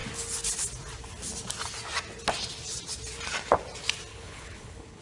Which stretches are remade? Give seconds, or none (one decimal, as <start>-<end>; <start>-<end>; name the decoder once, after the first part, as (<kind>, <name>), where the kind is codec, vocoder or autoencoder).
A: 4.1-5.0 (codec, HILCodec)